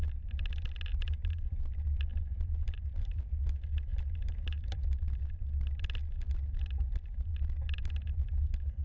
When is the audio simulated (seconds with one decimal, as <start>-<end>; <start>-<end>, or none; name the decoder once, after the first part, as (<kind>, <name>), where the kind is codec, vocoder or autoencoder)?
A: 0.9-1.4 (vocoder, BigVGAN v2); 2.1-3.2; 3.9-5.2